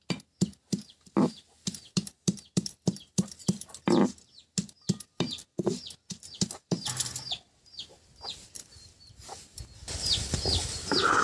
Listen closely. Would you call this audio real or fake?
real